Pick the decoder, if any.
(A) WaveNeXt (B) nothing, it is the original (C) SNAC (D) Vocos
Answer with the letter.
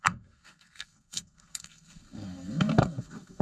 C